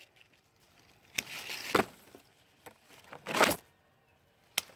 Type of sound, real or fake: real